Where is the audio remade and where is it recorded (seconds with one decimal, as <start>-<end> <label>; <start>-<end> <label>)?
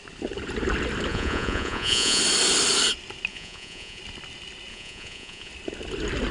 0.0-1.1 recorded; 1.1-2.2 remade; 2.2-3.3 recorded; 3.3-4.0 remade; 4.0-4.7 recorded; 4.7-5.5 remade; 5.5-6.3 recorded